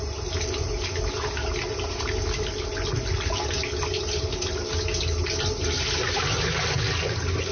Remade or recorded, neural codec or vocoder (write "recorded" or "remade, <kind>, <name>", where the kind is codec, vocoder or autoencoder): recorded